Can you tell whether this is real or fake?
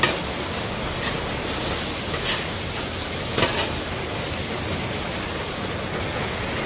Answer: real